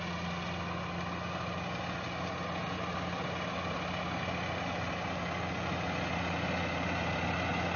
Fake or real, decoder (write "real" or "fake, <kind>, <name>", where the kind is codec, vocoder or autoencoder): real